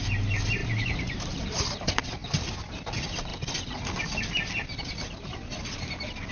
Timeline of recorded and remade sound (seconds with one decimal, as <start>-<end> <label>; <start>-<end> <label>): 0.0-0.6 recorded; 0.6-1.4 remade; 1.4-2.2 recorded; 2.2-2.8 remade; 2.8-6.3 recorded

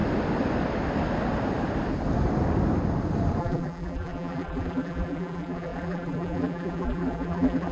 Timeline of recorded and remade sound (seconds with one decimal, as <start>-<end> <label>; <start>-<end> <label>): 0.0-3.4 recorded; 3.4-7.7 remade

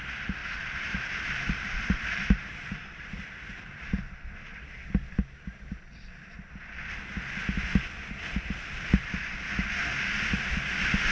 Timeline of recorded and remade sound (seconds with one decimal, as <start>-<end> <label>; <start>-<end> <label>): 0.0-0.4 recorded; 0.4-5.1 remade; 5.1-11.1 recorded

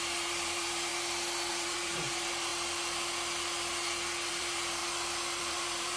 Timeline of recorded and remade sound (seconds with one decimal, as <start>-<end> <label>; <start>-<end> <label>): 0.0-0.9 remade; 0.9-1.5 recorded; 1.5-2.5 remade; 2.5-4.3 recorded; 4.3-4.8 remade; 4.8-5.4 recorded; 5.4-6.0 remade

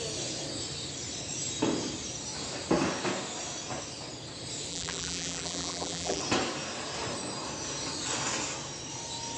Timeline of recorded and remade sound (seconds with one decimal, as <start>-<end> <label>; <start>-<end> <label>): 0.0-4.7 recorded; 4.7-6.2 remade; 6.2-9.4 recorded

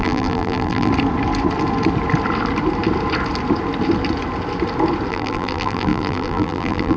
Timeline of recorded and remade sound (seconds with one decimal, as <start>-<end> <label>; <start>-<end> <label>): 0.0-0.9 remade; 0.9-5.1 recorded; 5.1-7.0 remade